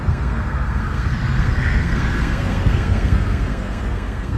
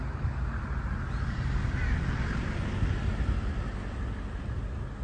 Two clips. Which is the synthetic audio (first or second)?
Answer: first